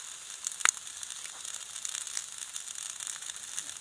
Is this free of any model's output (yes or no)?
yes